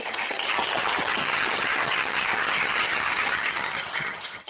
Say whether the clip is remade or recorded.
remade